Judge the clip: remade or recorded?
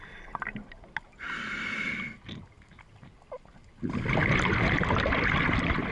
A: recorded